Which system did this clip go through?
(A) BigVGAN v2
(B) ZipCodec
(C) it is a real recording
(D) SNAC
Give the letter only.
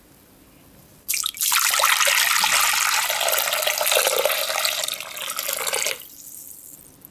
C